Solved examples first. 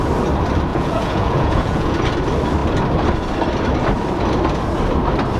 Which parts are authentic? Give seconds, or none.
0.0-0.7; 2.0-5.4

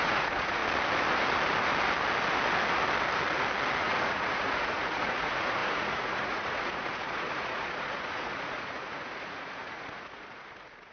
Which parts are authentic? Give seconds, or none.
0.6-3.8

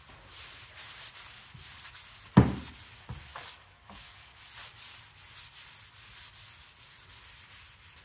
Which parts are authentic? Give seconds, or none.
0.0-3.3; 4.4-8.0

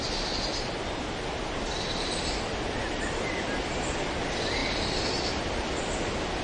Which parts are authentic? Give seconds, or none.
0.0-6.4

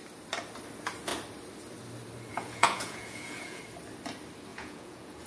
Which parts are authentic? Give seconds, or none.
0.0-2.3; 3.6-4.5

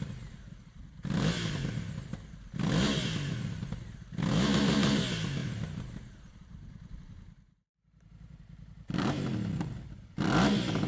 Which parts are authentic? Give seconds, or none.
0.0-5.4; 10.2-10.9

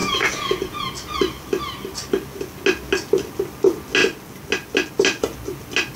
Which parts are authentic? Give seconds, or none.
0.9-6.0

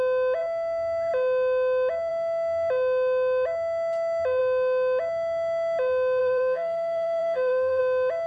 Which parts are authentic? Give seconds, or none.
0.0-6.2; 7.8-8.3